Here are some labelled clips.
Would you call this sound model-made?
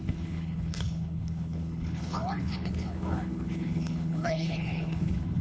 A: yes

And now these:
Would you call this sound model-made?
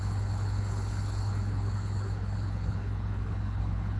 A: yes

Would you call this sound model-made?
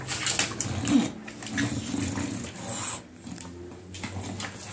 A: no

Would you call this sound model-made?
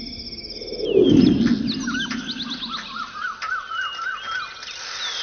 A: no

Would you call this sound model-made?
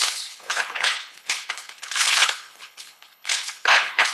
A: yes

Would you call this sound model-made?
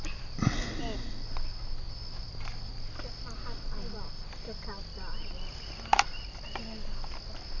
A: no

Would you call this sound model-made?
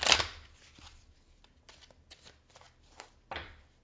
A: no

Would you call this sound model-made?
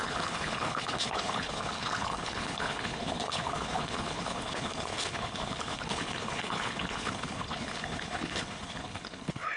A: yes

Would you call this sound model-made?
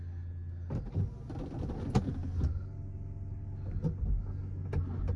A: no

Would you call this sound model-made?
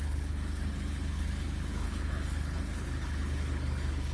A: yes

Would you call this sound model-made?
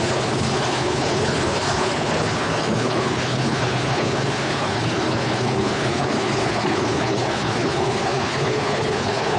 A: yes